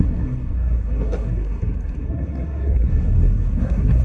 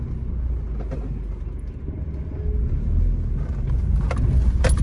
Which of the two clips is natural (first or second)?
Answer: second